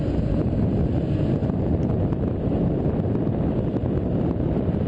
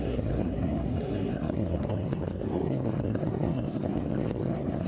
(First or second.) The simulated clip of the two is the second